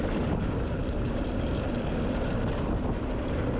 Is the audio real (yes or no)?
yes